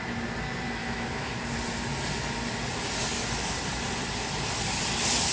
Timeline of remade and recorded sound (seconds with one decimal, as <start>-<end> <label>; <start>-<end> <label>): 0.0-0.8 recorded; 0.8-1.4 remade; 1.4-5.3 recorded